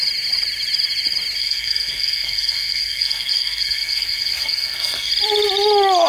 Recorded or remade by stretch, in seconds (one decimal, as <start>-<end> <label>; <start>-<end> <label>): 0.0-1.4 recorded; 1.4-5.1 remade; 5.1-6.1 recorded